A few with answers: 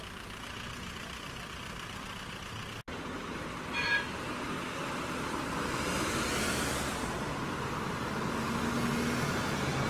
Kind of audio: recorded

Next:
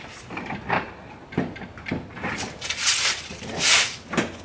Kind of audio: recorded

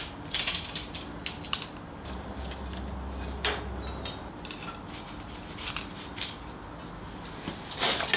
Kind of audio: recorded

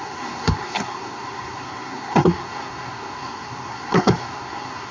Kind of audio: remade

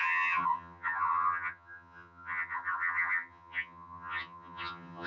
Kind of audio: remade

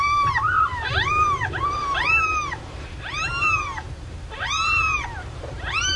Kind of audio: remade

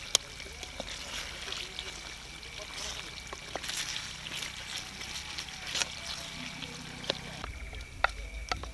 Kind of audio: recorded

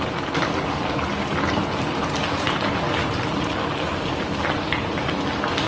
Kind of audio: recorded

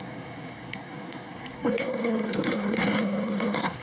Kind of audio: remade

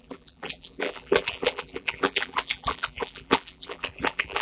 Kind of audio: remade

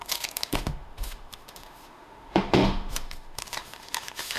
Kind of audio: remade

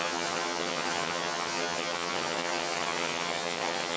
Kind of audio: remade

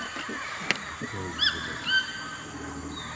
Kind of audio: recorded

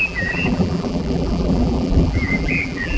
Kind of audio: remade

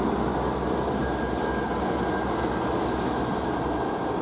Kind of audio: recorded